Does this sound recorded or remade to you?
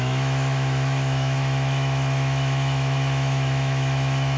remade